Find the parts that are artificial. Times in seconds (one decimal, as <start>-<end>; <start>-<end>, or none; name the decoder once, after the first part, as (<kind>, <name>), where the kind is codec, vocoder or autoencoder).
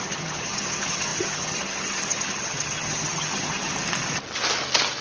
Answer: 0.0-3.7 (vocoder, HiFi-GAN)